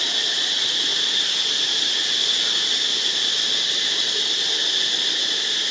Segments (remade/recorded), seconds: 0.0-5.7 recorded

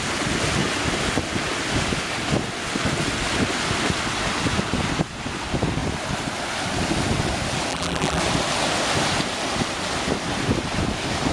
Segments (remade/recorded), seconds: 0.0-7.7 recorded; 7.7-8.2 remade; 8.2-11.3 recorded

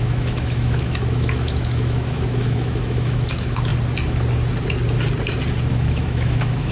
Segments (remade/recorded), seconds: 0.0-3.7 remade; 3.7-5.7 recorded; 5.7-6.7 remade

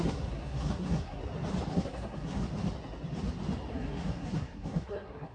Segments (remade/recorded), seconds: 0.0-1.2 remade; 1.2-1.7 recorded; 1.7-2.4 remade; 2.4-3.7 recorded; 3.7-5.3 remade

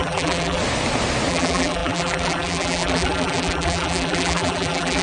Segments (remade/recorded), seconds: 0.0-0.6 remade; 0.6-1.3 recorded; 1.3-5.0 remade

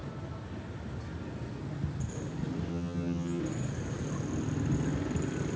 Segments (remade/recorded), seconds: 0.0-2.7 recorded; 2.7-3.4 remade; 3.4-5.6 recorded

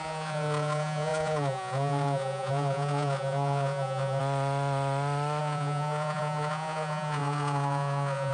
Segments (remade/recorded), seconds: 0.0-4.2 remade; 4.2-5.4 recorded; 5.4-8.3 remade